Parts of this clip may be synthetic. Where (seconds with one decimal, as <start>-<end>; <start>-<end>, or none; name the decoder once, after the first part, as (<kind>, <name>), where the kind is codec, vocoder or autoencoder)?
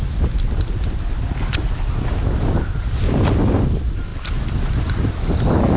none